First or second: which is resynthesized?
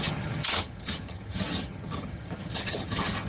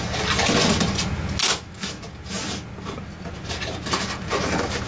first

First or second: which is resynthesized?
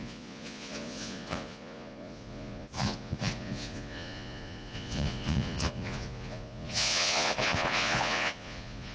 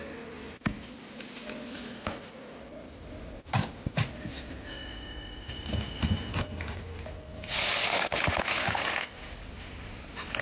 first